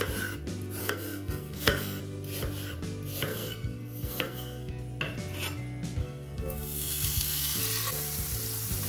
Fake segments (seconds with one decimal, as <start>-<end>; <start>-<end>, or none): 0.8-2.0; 3.3-4.7; 6.0-7.6